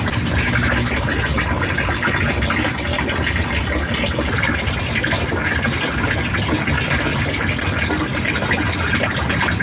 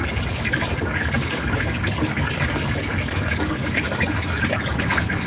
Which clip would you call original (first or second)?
first